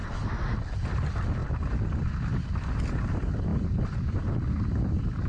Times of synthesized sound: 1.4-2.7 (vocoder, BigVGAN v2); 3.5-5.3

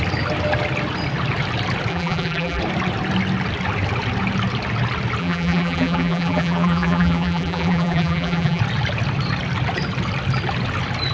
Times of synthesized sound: 1.9-2.6 (vocoder, BigVGAN v2); 5.2-8.6

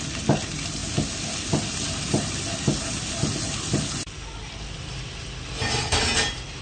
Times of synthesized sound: none

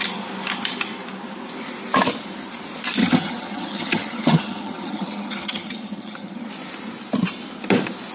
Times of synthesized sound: 3.0-6.5 (vocoder, HiFi-GAN)

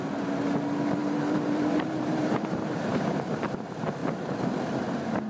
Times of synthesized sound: 1.0-3.6 (vocoder, BigVGAN v2)

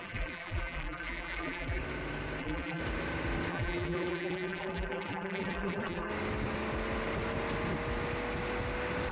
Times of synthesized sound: 0.0-1.8 (vocoder, BigVGAN v2); 2.4-2.8; 3.5-6.1

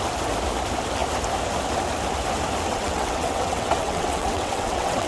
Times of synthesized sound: 2.7-5.1 (vocoder, WaveNeXt)

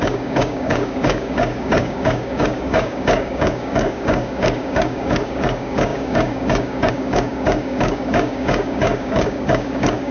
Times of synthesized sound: 0.0-10.1 (codec, DAC)